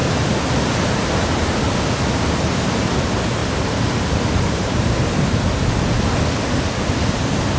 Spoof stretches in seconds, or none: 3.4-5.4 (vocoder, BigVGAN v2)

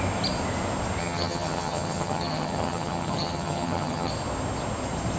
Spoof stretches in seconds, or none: 1.0-4.1 (vocoder, HiFi-GAN)

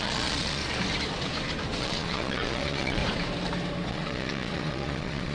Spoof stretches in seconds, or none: 0.0-0.6 (vocoder, Vocos); 1.8-3.0; 3.9-5.3

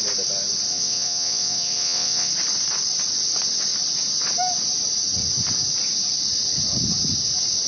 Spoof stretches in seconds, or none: 0.7-2.3 (vocoder, WaveNeXt)

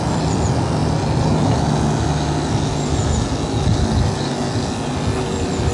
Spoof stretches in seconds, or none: none

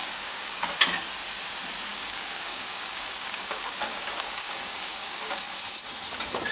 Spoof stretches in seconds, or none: 0.0-0.7 (codec, DAC); 1.9-5.4

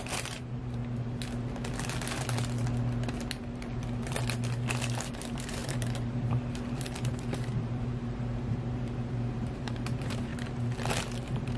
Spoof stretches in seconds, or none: 0.0-0.8 (vocoder, BigVGAN v2); 5.1-10.3; 11.2-11.6